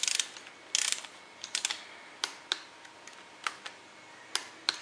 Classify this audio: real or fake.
real